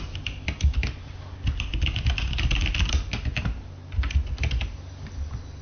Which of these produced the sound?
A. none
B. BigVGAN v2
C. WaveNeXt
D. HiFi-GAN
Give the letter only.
A